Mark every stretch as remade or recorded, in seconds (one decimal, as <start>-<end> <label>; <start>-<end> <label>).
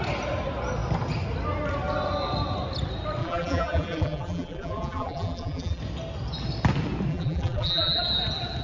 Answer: 0.0-3.2 recorded; 3.2-5.8 remade; 5.8-7.1 recorded; 7.1-8.0 remade; 8.0-8.6 recorded